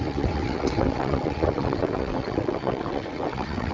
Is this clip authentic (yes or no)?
no